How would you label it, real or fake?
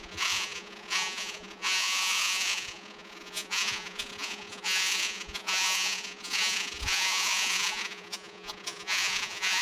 fake